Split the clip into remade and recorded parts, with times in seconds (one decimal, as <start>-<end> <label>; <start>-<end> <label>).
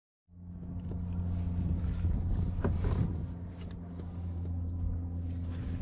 0.0-5.8 recorded